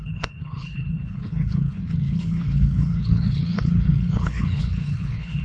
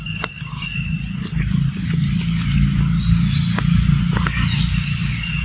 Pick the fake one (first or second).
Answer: first